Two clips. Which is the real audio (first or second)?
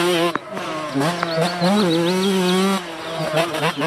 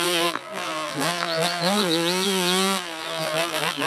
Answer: first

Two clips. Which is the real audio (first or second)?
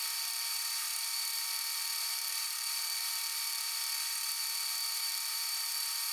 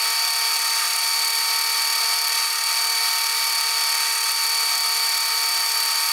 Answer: second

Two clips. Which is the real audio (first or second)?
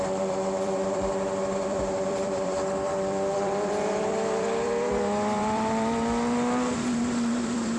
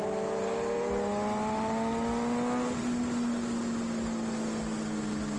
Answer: second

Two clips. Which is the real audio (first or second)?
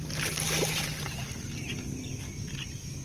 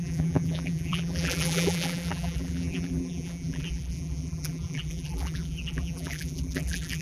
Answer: first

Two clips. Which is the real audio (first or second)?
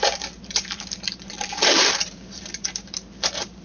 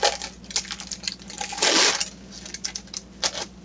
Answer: second